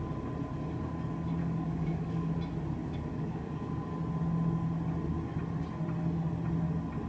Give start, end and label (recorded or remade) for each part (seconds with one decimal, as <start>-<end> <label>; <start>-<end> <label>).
0.0-1.4 recorded; 1.4-2.3 remade; 2.3-2.8 recorded; 2.8-3.9 remade; 3.9-7.1 recorded